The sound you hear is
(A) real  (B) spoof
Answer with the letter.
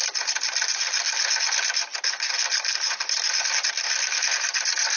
A